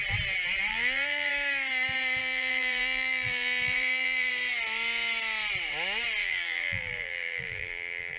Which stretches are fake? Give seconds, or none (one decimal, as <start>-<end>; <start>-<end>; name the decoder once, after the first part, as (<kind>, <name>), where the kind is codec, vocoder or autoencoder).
0.7-1.3 (vocoder, BigVGAN v2); 2.2-4.3; 6.2-8.2